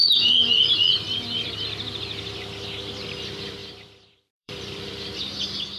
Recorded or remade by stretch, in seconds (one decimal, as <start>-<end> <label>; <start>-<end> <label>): 0.0-1.6 remade; 1.6-3.6 recorded; 3.6-5.8 remade